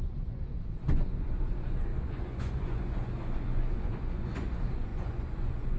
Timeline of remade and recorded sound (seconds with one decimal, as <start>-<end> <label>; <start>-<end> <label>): 0.0-5.8 remade